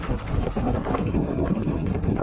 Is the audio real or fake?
fake